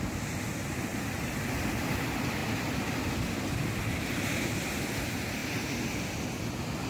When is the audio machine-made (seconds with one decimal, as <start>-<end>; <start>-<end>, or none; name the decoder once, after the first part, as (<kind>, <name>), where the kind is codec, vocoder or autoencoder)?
0.9-1.9 (vocoder, BigVGAN v2); 2.4-4.4